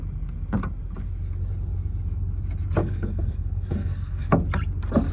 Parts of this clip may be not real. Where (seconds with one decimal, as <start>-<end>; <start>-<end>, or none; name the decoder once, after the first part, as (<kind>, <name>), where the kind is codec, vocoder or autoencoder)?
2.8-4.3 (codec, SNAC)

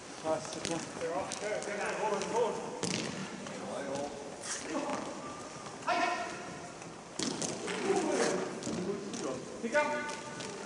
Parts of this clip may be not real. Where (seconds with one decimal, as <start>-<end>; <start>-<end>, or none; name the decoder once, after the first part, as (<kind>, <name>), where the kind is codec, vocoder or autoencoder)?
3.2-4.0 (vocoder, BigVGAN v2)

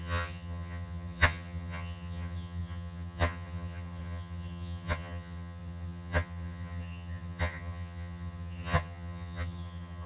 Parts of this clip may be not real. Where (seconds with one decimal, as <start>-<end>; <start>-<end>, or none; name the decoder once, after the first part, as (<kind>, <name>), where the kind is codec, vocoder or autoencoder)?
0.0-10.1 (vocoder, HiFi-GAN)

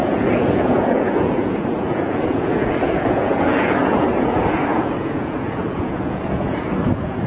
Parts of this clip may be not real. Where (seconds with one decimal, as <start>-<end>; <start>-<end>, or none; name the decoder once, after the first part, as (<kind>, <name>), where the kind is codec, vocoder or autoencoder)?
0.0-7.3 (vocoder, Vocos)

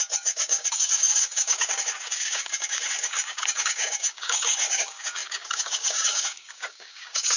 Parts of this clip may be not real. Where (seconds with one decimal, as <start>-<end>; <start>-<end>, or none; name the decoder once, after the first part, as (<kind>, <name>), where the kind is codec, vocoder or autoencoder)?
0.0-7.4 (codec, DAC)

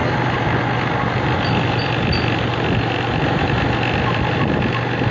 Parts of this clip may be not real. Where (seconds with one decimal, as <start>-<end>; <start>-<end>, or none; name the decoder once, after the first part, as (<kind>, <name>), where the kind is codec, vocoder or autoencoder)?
none